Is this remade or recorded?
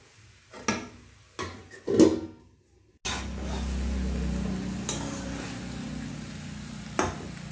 recorded